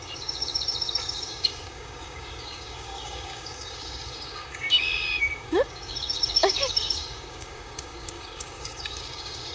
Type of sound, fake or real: fake